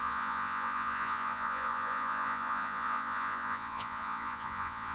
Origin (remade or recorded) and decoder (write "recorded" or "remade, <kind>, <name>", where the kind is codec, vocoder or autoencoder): remade, vocoder, Vocos